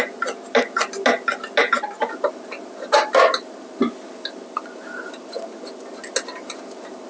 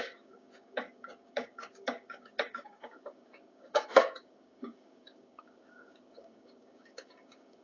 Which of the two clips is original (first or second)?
first